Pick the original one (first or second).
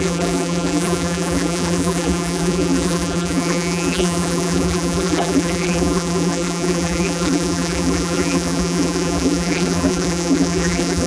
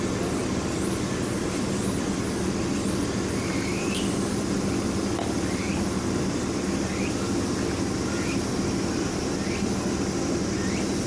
second